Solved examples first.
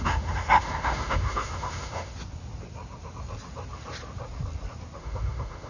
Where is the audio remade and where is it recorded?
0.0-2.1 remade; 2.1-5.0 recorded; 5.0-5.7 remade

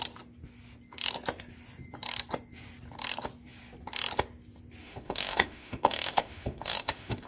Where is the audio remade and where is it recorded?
0.0-4.8 recorded; 4.8-7.3 remade

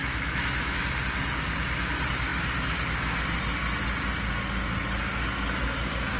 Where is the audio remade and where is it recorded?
0.0-0.8 remade; 0.8-6.2 recorded

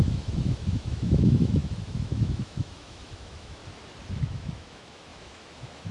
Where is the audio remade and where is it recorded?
0.0-3.6 remade; 3.6-4.2 recorded; 4.2-5.9 remade

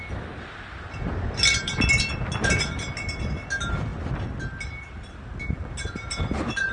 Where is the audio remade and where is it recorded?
0.0-6.7 recorded

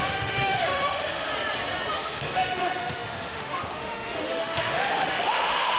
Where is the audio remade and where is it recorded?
0.0-1.3 remade; 1.3-1.9 recorded; 1.9-5.8 remade

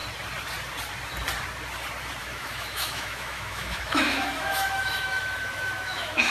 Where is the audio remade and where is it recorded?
0.0-2.2 recorded; 2.2-6.3 remade

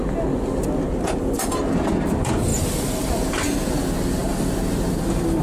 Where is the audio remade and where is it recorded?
0.0-5.4 recorded